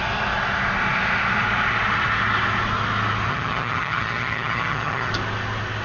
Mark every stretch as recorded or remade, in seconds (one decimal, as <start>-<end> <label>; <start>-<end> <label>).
0.0-3.3 recorded; 3.3-5.1 remade; 5.1-5.8 recorded